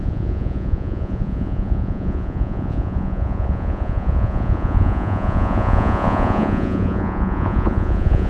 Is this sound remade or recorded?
remade